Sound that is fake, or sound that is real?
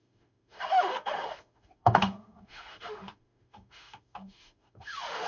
fake